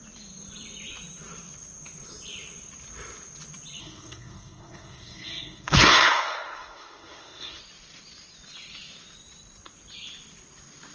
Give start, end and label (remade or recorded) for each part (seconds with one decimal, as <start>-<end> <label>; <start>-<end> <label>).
0.0-3.8 recorded; 3.8-7.6 remade; 7.6-10.9 recorded